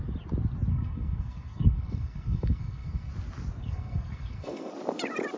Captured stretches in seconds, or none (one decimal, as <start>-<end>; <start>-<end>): 0.0-0.7; 3.1-3.6; 4.7-5.4